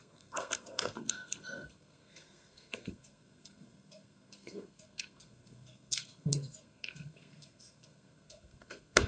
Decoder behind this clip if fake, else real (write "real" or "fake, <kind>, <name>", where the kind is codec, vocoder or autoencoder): fake, codec, SNAC